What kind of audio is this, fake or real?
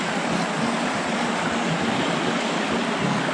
real